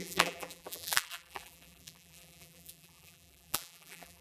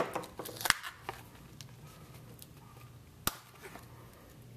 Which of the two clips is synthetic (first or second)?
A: first